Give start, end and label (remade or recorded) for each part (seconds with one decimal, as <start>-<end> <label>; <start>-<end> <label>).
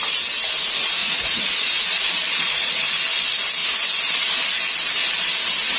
0.0-1.0 recorded; 1.0-3.0 remade; 3.0-5.8 recorded